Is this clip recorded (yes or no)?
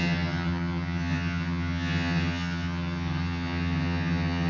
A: no